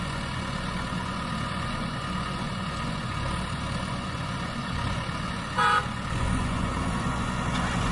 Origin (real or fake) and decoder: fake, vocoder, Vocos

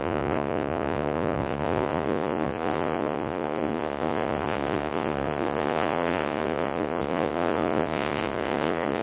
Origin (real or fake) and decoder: fake, vocoder, Vocos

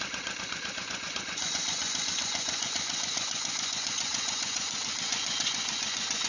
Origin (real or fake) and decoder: fake, vocoder, Vocos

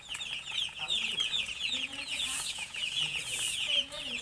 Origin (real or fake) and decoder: fake, vocoder, Vocos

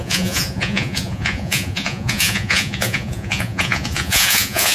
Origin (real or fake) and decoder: fake, vocoder, Vocos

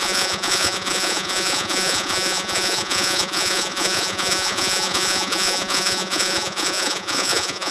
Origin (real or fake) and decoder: fake, vocoder, Vocos